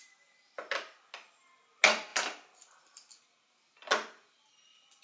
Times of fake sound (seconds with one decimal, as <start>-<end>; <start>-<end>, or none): none